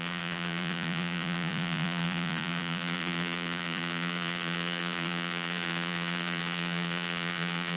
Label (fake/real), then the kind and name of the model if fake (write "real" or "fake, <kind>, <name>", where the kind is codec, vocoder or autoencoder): fake, vocoder, Vocos